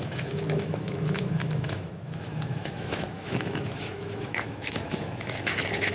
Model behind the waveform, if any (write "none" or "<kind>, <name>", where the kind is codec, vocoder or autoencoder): autoencoder, DAC-VAE